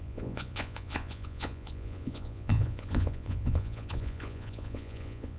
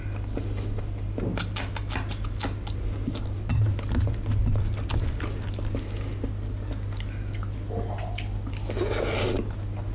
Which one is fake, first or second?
first